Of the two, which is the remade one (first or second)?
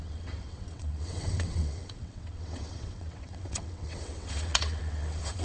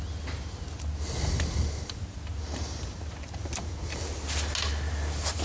first